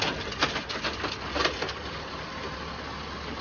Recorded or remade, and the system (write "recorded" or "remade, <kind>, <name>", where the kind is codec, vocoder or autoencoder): recorded